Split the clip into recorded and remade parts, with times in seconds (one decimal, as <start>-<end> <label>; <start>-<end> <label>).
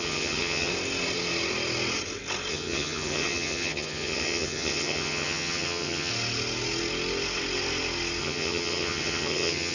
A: 0.0-0.7 remade; 0.7-2.5 recorded; 2.5-6.1 remade; 6.1-8.2 recorded; 8.2-9.7 remade